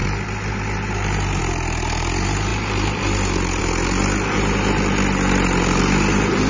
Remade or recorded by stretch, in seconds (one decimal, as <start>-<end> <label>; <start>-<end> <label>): 0.0-6.5 recorded